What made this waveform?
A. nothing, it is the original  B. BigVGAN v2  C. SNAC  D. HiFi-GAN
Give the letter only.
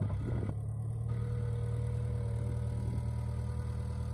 A